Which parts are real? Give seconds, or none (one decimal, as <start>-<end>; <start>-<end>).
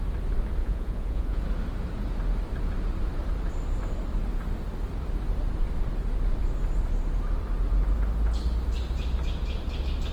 0.0-0.6; 1.4-10.1